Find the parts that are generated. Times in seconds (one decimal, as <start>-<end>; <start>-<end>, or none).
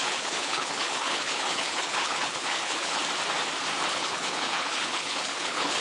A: 0.0-3.0; 3.9-5.8